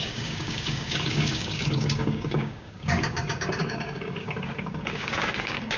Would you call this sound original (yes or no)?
no